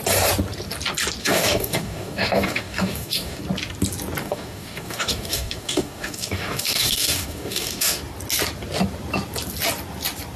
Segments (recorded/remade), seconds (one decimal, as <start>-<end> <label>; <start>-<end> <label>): 0.0-1.2 recorded; 1.2-3.4 remade; 3.4-4.2 recorded; 4.2-8.0 remade; 8.0-10.4 recorded